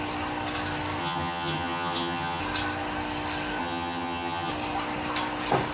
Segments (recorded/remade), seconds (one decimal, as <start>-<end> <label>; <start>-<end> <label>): 0.0-1.0 recorded; 1.0-2.4 remade; 2.4-3.6 recorded; 3.6-4.5 remade; 4.5-5.7 recorded